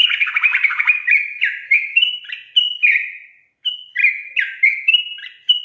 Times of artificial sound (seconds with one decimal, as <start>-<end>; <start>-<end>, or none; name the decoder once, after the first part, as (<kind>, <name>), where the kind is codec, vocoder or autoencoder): 0.0-2.1 (vocoder, BigVGAN v2)